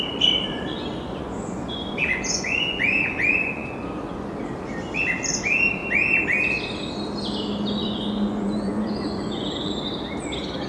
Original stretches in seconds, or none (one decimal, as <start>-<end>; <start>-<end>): 0.0-0.5; 4.3-7.8; 9.7-10.7